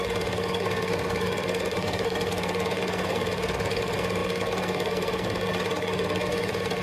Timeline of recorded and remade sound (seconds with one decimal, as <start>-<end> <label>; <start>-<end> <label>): 0.0-6.8 remade